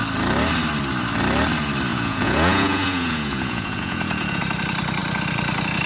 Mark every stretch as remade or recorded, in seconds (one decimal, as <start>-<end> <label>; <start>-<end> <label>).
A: 0.0-1.9 recorded; 1.9-4.4 remade; 4.4-5.9 recorded